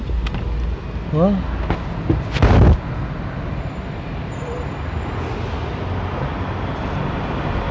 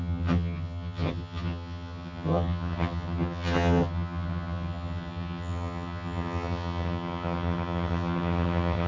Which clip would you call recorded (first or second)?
first